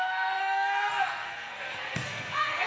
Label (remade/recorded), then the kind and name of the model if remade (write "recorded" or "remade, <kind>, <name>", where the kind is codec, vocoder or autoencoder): remade, codec, SNAC